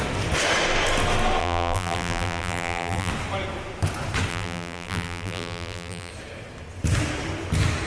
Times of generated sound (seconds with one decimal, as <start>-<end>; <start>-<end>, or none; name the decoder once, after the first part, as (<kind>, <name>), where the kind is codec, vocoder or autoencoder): 1.4-3.1 (vocoder, BigVGAN v2); 4.3-6.1